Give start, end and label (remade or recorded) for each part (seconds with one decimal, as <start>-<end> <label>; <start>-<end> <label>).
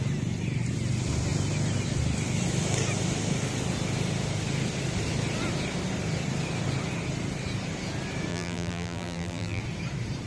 0.0-8.3 recorded; 8.3-9.6 remade; 9.6-10.3 recorded